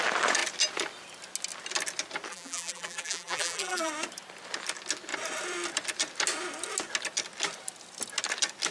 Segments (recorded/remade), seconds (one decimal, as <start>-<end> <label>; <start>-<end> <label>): 0.0-2.3 recorded; 2.3-3.9 remade; 3.9-8.7 recorded